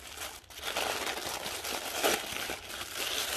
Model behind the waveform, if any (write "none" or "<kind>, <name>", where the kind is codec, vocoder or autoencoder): none